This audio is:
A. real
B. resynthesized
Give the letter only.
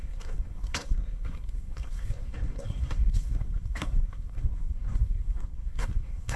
B